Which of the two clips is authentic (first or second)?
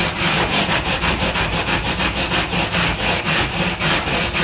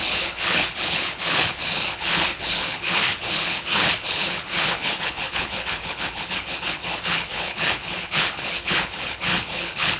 first